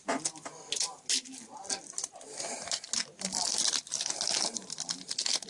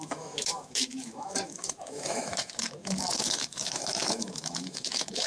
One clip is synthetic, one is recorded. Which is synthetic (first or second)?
second